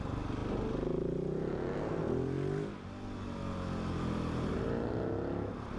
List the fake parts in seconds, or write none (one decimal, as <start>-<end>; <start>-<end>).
none